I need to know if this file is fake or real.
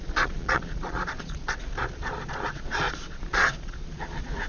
fake